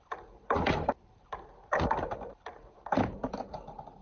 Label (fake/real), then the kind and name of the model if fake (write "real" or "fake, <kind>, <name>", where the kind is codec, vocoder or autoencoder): fake, vocoder, BigVGAN v2